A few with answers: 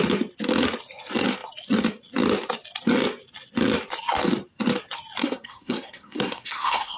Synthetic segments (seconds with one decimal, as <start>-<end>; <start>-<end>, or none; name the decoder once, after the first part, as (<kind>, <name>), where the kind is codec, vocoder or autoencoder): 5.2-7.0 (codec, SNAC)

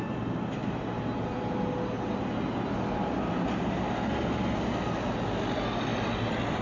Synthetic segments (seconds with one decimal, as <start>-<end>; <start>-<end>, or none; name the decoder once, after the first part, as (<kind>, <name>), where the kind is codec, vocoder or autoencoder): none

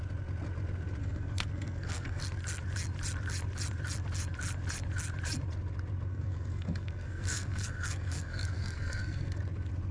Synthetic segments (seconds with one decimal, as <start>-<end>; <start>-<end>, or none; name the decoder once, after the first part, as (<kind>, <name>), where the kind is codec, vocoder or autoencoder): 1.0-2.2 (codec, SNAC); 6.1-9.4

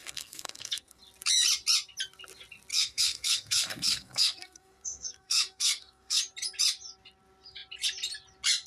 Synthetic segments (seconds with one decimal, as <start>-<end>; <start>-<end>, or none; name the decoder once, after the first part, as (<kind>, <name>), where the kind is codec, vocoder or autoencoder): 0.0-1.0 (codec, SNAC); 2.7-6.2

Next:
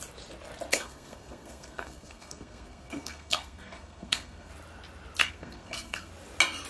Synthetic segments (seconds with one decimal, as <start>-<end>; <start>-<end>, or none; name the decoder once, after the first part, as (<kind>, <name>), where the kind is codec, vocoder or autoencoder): 0.7-4.5 (codec, SNAC); 5.2-6.1

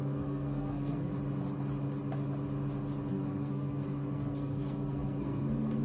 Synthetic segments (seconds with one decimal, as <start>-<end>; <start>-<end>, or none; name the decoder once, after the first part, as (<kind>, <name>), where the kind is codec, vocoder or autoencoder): 0.0-1.1 (codec, SNAC); 3.1-5.8

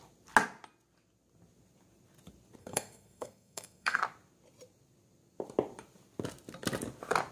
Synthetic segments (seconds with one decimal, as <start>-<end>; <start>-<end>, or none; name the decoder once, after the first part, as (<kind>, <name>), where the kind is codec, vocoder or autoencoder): 2.6-4.0 (codec, SNAC)